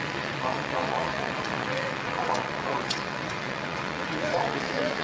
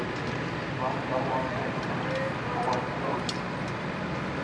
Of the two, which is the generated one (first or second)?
first